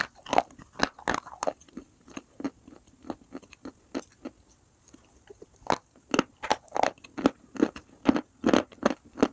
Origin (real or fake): real